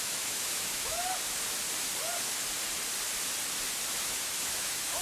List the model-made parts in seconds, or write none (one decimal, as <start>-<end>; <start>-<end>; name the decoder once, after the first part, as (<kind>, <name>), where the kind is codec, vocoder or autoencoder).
0.0-1.0 (autoencoder, DAC-VAE); 4.0-5.0

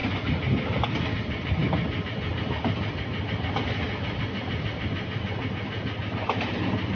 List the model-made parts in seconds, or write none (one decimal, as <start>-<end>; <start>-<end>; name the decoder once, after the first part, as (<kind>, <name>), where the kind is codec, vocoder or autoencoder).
none

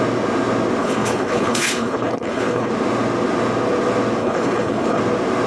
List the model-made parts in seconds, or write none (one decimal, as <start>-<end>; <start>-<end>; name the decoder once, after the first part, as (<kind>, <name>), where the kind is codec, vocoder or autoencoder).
0.8-2.7 (codec, HILCodec); 4.2-5.0

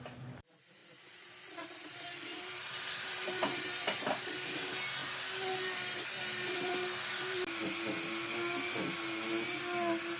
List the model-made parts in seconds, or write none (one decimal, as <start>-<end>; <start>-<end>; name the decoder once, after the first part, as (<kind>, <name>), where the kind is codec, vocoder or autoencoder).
0.8-3.8 (vocoder, BigVGAN v2); 5.0-6.2; 7.1-7.6